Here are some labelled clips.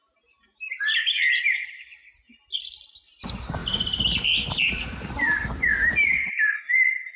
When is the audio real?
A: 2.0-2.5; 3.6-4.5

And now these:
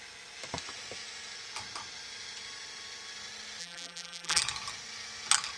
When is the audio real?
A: 0.0-3.6; 4.4-5.6

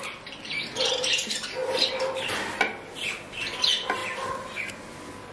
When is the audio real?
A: 0.0-4.0; 4.7-5.3

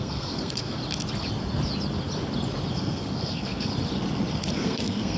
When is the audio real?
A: 0.8-2.7; 3.7-4.5

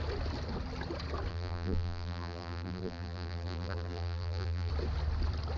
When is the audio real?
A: 0.0-1.3; 4.7-5.6

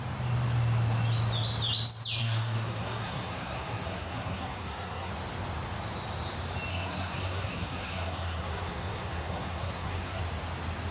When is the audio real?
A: 0.0-2.2; 5.1-6.7; 10.2-10.9

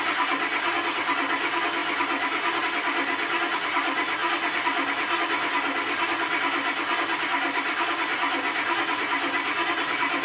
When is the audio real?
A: 0.0-10.2

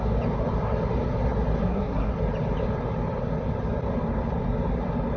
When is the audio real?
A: 0.0-1.6; 2.1-5.2